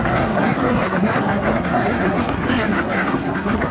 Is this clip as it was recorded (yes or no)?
no